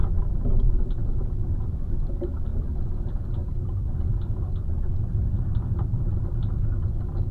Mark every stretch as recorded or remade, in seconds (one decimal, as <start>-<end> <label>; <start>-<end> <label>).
0.0-2.1 remade; 2.1-7.3 recorded